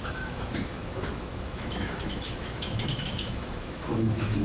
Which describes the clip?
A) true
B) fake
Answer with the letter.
B